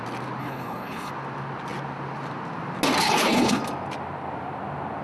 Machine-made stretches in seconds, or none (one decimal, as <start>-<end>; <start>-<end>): 0.4-1.1; 3.0-3.6